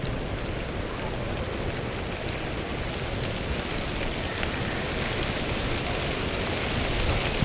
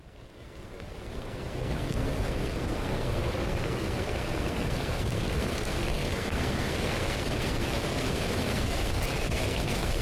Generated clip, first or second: second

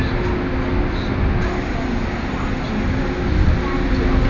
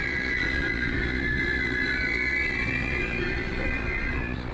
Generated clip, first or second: second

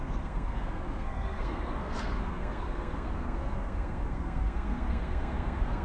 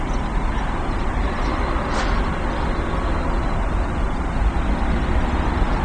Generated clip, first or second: first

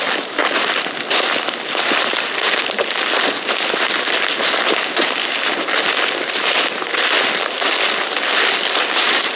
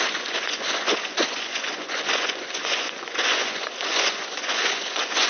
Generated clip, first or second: second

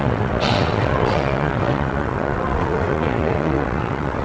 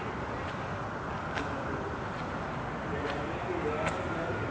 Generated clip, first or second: first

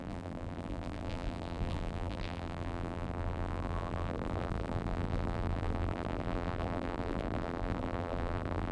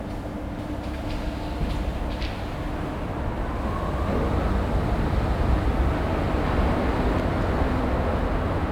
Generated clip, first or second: first